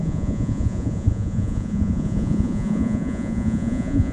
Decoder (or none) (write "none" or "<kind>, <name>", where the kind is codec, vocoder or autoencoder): vocoder, Vocos